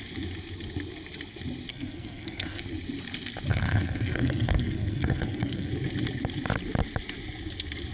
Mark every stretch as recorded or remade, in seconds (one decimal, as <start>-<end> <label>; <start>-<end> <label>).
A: 0.0-1.7 recorded; 1.7-2.6 remade; 2.6-3.5 recorded; 3.5-5.7 remade; 5.7-7.9 recorded